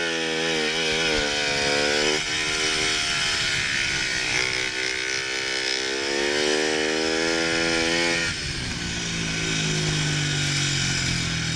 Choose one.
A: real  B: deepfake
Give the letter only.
A